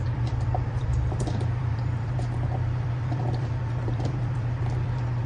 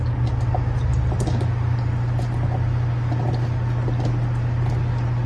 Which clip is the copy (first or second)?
first